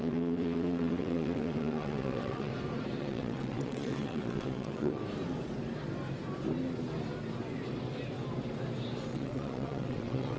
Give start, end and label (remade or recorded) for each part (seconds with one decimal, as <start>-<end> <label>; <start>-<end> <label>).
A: 0.0-2.5 remade; 2.5-3.0 recorded; 3.0-5.0 remade; 5.0-9.1 recorded; 9.1-10.4 remade